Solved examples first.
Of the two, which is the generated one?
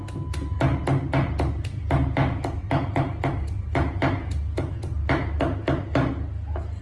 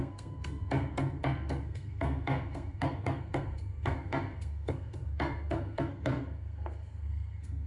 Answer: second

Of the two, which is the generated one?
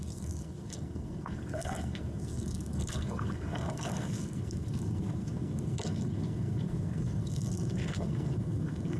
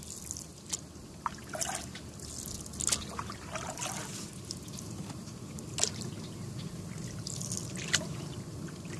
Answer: first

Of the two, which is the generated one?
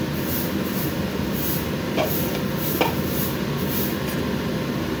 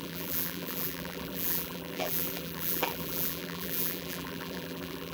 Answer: second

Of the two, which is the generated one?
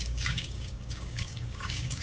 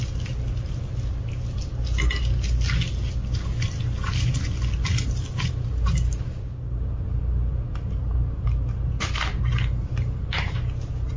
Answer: first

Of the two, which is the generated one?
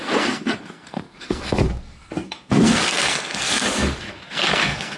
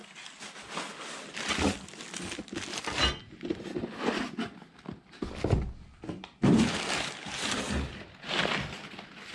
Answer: first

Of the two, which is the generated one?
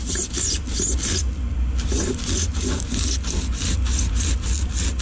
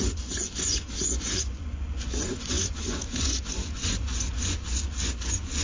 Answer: second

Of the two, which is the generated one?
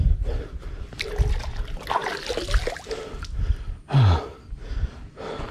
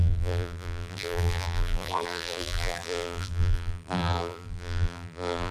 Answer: second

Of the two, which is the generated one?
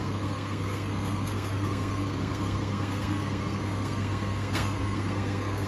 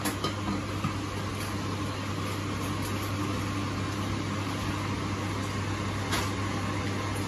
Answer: first